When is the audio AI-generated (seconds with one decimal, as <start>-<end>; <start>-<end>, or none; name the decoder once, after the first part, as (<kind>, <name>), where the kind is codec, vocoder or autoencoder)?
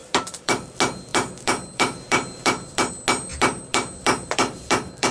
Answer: 0.0-0.6 (vocoder, BigVGAN v2); 1.1-2.9; 3.3-5.1